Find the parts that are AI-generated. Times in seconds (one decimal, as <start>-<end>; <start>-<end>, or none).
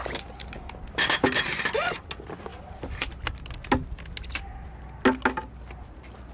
2.5-3.2